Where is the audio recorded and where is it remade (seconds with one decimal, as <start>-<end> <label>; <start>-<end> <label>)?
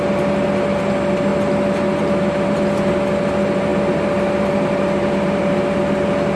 0.0-6.4 recorded